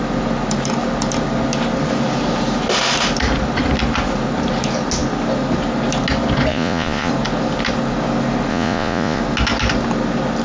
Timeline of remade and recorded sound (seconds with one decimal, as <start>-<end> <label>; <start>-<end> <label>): 0.0-6.5 recorded; 6.5-7.1 remade; 7.1-8.5 recorded; 8.5-9.2 remade; 9.2-10.4 recorded